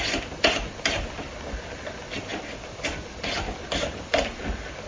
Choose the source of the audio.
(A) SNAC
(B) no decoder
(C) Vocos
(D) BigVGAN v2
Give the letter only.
B